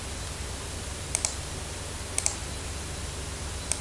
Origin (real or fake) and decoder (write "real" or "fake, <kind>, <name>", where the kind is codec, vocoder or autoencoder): real